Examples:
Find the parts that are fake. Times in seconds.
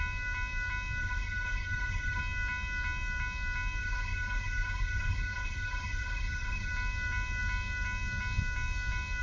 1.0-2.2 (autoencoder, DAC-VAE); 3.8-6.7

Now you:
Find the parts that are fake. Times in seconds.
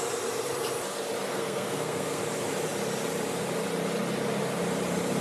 1.3-2.2 (codec, SNAC)